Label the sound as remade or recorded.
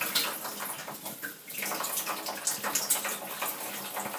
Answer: recorded